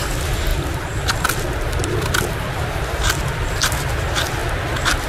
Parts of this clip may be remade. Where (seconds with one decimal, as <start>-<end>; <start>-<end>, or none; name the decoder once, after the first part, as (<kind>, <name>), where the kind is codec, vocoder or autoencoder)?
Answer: 0.5-3.1 (vocoder, BigVGAN v2)